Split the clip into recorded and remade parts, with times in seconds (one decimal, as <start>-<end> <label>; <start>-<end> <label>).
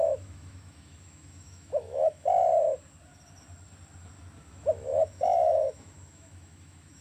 0.0-2.4 remade; 2.4-4.5 recorded; 4.5-7.0 remade